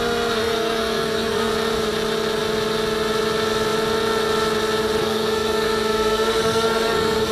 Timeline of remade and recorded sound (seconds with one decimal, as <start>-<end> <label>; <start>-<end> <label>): 0.0-0.4 recorded; 0.4-1.5 remade; 1.5-5.0 recorded; 5.0-7.3 remade